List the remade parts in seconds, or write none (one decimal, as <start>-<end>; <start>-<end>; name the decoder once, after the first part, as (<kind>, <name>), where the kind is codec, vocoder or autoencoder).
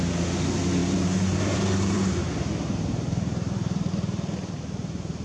0.8-3.9 (vocoder, BigVGAN v2)